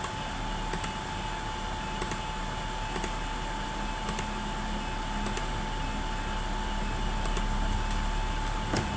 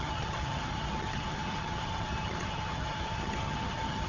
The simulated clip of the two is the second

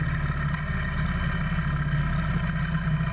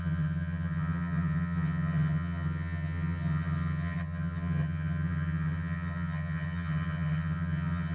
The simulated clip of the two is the second